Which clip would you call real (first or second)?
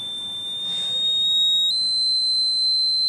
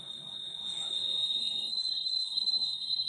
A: first